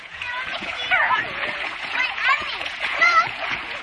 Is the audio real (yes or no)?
no